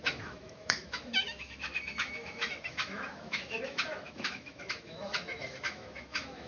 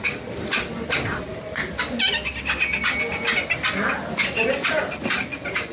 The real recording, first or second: second